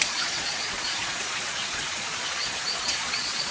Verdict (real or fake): fake